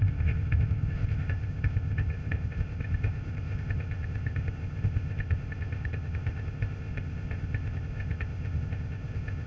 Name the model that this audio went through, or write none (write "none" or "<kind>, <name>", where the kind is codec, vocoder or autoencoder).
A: codec, ZipCodec